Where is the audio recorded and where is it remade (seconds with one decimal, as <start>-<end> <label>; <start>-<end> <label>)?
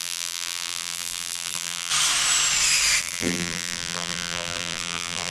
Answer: 0.0-1.9 remade; 1.9-3.0 recorded; 3.0-5.3 remade